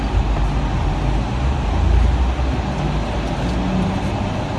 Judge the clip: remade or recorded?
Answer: recorded